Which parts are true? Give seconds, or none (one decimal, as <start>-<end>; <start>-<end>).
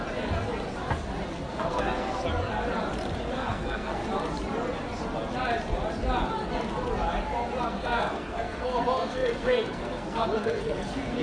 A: 0.0-1.5; 2.2-3.3; 4.0-7.6